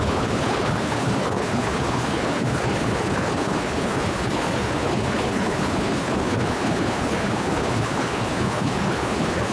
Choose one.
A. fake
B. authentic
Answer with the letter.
A